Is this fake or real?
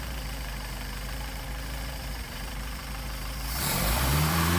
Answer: fake